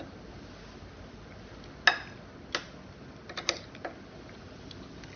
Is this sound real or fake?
real